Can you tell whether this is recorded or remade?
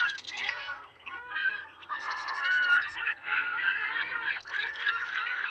remade